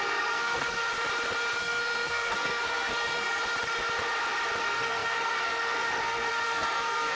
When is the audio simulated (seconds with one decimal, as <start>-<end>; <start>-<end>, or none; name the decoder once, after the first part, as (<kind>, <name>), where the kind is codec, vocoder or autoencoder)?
0.0-0.9 (codec, SNAC); 1.6-3.4; 4.6-7.1